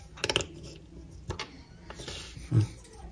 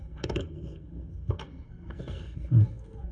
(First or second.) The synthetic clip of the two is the second